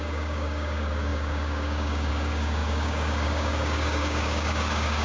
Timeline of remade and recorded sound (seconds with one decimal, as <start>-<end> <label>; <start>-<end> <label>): 0.0-5.0 remade